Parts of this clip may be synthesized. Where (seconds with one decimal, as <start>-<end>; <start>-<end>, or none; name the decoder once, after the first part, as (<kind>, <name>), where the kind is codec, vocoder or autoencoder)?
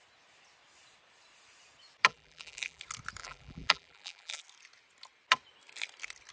2.1-2.8 (vocoder, BigVGAN v2); 3.2-4.4